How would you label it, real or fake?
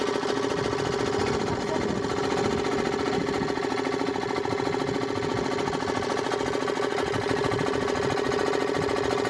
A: real